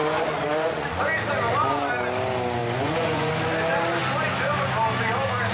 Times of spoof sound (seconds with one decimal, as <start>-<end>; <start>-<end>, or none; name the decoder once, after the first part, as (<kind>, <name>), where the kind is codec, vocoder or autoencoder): 0.0-1.0 (vocoder, Vocos); 2.6-3.3